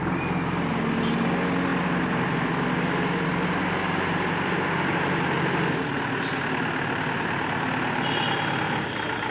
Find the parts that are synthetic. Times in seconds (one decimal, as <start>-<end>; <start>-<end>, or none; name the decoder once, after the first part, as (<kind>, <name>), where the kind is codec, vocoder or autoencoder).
1.7-2.5 (vocoder, BigVGAN v2)